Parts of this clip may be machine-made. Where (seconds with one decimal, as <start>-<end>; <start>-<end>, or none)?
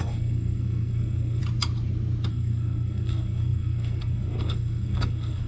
0.0-1.4; 2.3-5.5